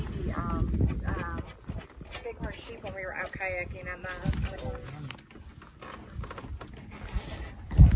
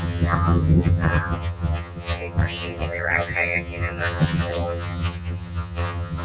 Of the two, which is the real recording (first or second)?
first